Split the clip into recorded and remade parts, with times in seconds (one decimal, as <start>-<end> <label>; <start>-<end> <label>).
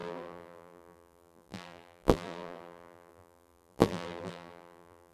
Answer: 0.0-5.1 remade